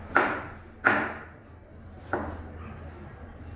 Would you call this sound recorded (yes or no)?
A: yes